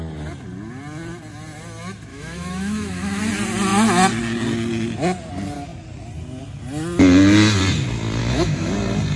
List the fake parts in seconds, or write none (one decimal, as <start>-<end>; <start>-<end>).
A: 2.1-3.2; 8.2-8.7